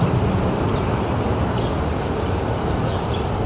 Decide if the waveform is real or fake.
real